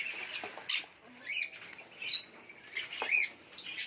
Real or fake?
real